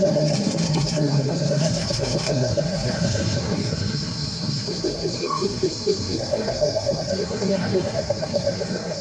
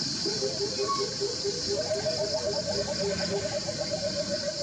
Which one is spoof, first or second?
first